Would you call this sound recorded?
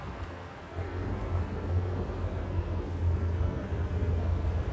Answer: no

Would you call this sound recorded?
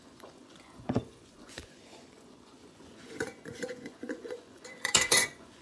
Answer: no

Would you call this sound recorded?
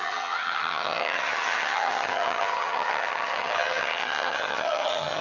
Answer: no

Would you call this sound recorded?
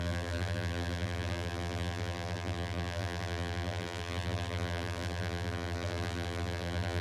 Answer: no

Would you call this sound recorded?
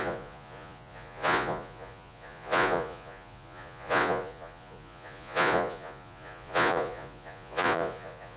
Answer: no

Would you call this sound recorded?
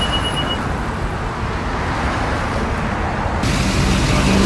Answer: yes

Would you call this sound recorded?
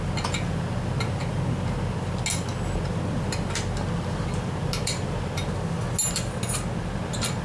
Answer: yes